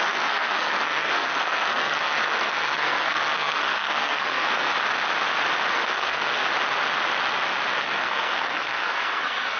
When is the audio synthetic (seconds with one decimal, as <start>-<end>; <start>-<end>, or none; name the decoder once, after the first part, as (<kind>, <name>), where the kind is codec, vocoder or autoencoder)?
0.0-4.7 (codec, SNAC); 5.7-6.4; 7.8-9.6